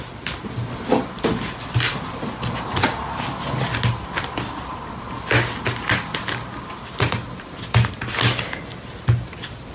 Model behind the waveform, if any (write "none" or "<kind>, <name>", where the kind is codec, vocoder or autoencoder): none